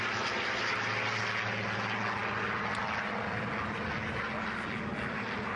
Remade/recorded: recorded